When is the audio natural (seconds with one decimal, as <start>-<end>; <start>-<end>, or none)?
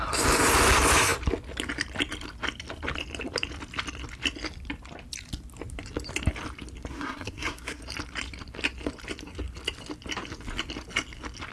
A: 0.0-6.9; 7.8-11.5